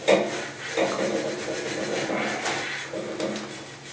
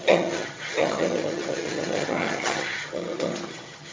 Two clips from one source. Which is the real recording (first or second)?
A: first